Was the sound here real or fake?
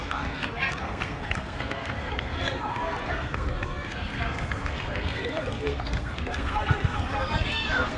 fake